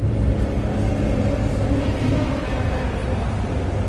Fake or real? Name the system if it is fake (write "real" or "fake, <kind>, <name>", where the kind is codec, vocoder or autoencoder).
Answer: real